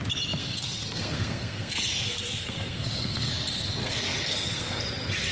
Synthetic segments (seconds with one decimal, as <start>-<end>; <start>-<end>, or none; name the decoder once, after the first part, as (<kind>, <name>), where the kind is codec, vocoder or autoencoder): 0.4-3.3 (codec, SNAC); 3.8-4.8